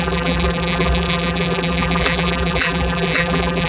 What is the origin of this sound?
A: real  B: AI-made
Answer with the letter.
B